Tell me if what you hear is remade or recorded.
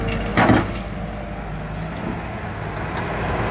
recorded